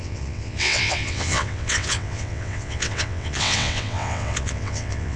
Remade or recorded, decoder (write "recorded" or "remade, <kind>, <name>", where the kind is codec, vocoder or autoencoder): remade, vocoder, WaveNeXt